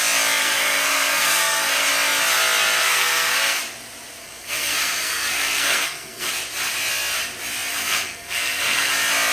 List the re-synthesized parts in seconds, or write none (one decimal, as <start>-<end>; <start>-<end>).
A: 0.4-1.9; 2.8-3.6; 4.2-6.3; 7.7-8.9